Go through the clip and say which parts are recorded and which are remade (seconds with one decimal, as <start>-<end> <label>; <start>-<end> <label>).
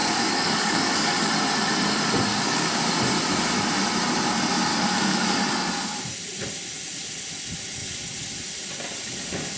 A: 0.0-1.3 remade; 1.3-2.3 recorded; 2.3-2.8 remade; 2.8-4.7 recorded; 4.7-5.4 remade; 5.4-9.6 recorded